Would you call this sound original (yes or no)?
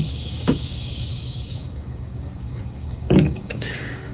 no